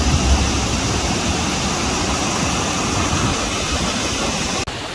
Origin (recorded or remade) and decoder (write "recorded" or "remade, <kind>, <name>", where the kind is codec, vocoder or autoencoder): recorded